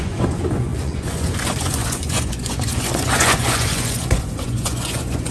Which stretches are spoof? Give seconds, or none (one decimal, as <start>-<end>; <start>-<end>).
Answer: 0.0-5.3